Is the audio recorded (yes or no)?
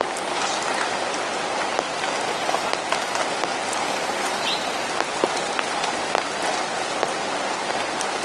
yes